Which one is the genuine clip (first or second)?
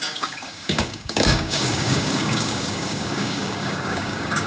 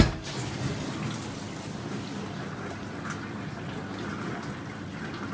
second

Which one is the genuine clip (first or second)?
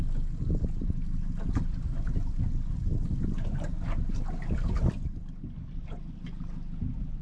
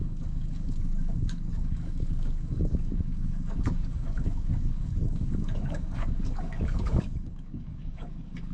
first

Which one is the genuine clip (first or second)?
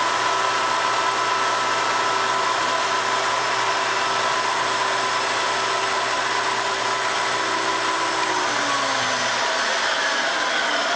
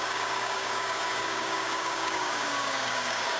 first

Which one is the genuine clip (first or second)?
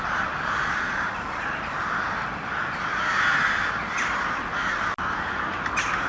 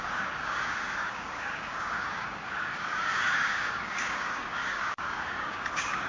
first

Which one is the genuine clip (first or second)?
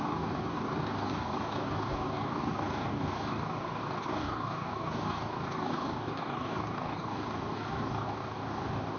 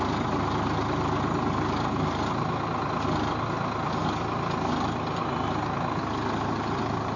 second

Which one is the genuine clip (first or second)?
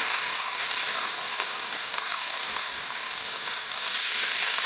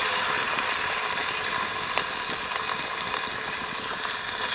second